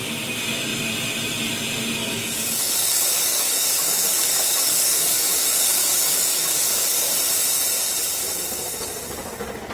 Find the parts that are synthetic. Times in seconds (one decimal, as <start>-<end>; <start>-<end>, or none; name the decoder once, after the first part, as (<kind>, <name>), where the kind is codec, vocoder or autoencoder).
2.0-7.1 (codec, DAC)